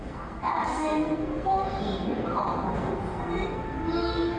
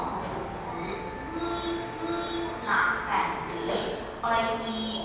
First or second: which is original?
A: second